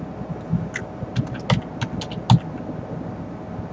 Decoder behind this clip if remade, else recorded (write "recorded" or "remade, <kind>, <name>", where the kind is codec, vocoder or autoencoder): recorded